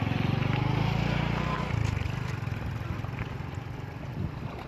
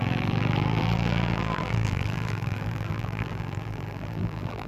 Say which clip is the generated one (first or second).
second